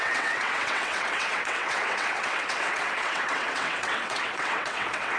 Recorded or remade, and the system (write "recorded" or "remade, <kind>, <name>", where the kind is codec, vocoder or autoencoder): remade, vocoder, WaveNeXt